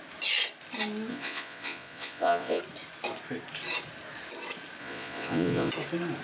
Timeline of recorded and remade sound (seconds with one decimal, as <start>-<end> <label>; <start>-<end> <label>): 0.0-1.1 recorded; 1.1-2.6 remade; 2.6-4.8 recorded; 4.8-5.7 remade; 5.7-6.2 recorded